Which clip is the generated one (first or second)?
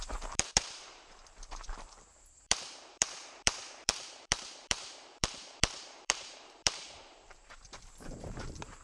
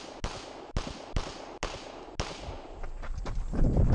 first